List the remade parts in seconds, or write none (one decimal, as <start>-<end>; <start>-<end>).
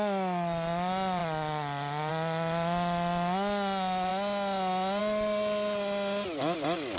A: none